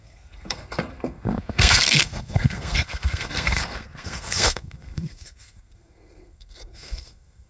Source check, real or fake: fake